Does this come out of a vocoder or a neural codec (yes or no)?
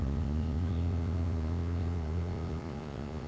yes